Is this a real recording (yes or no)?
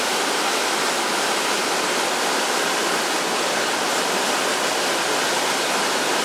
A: yes